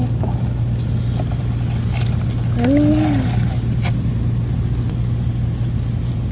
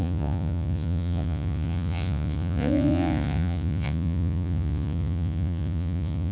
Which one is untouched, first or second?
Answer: first